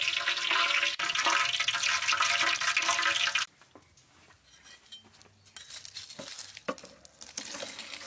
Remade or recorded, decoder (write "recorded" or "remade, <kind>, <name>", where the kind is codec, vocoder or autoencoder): recorded